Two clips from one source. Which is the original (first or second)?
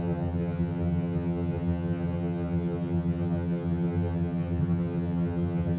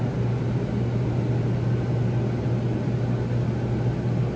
second